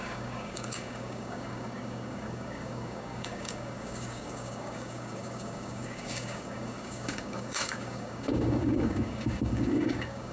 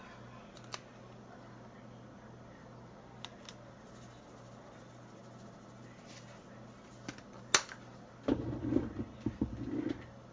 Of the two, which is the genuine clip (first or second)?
second